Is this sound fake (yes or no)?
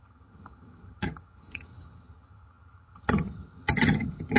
yes